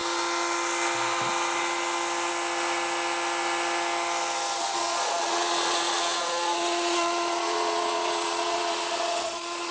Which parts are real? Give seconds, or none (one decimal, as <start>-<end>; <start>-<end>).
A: 0.0-4.6